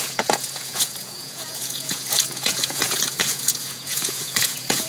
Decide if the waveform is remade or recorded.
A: remade